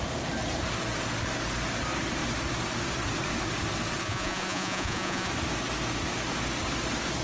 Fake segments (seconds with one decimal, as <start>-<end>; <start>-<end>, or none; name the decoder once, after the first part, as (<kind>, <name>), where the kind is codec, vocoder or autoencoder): 4.0-5.3 (vocoder, Vocos)

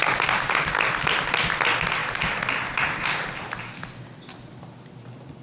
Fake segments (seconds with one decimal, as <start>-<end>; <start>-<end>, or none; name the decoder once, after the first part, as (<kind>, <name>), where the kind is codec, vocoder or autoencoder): none

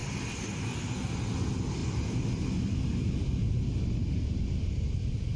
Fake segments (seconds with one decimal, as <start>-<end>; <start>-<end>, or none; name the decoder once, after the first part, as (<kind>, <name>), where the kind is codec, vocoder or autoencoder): none

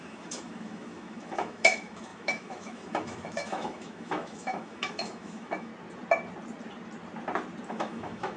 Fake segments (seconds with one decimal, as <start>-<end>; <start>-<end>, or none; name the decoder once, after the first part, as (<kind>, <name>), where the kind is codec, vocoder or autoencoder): 0.0-5.7 (autoencoder, DAC-VAE); 7.7-8.4